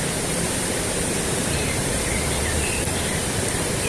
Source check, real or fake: fake